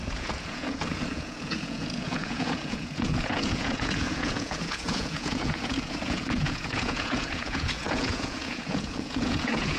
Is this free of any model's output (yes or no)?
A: no